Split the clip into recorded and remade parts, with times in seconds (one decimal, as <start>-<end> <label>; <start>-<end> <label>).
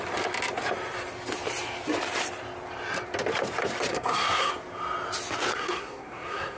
0.0-3.9 recorded; 3.9-4.5 remade; 4.5-5.5 recorded; 5.5-6.6 remade